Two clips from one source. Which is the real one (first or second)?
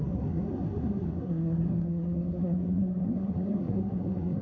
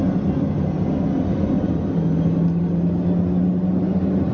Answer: second